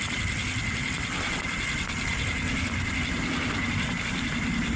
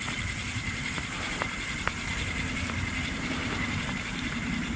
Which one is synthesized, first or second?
second